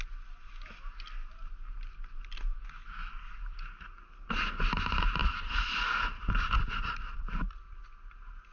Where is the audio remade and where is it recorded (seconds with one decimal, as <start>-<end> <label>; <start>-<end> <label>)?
0.0-5.2 recorded; 5.2-6.3 remade; 6.3-8.5 recorded